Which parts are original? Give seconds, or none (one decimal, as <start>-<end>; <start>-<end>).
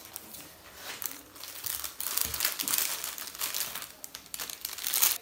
0.0-5.2